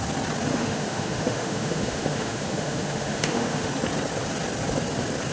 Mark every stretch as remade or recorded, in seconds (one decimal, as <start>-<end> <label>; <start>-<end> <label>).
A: 0.0-0.5 recorded; 0.5-3.7 remade; 3.7-5.3 recorded